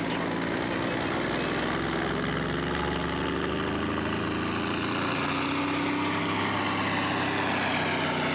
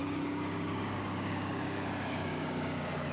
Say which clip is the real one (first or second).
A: first